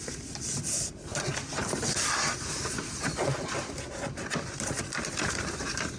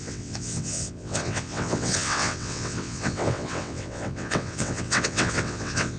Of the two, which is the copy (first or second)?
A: second